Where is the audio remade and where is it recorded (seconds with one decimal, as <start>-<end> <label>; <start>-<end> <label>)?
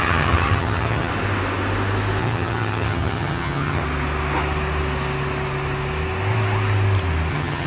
0.0-1.1 remade; 1.1-2.2 recorded; 2.2-3.8 remade; 3.8-7.3 recorded; 7.3-7.7 remade